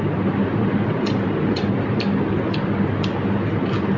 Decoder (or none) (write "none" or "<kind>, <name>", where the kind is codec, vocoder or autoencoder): none